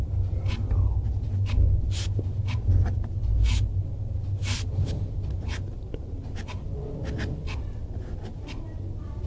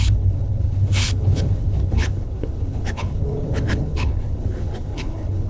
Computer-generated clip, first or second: second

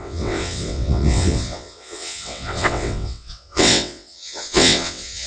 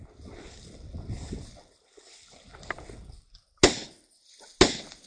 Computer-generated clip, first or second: first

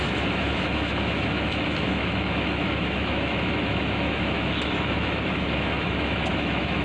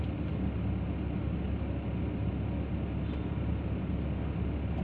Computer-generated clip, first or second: first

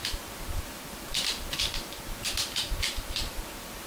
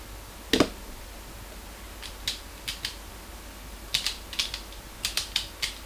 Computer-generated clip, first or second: first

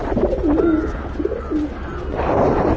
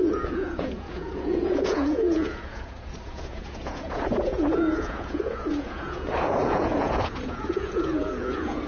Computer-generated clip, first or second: second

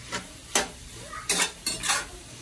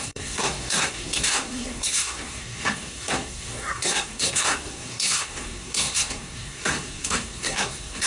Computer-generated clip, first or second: second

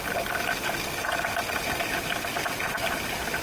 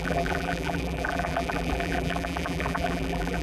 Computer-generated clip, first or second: second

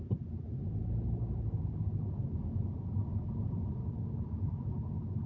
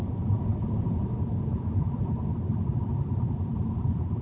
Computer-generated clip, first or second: second